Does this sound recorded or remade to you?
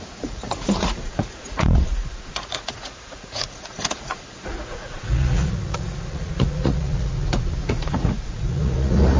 remade